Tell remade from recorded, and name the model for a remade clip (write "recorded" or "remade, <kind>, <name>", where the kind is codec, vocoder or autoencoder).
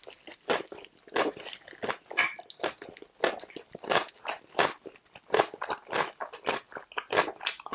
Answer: recorded